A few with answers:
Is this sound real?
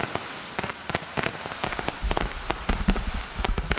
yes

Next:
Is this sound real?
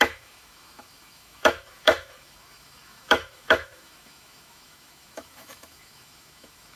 no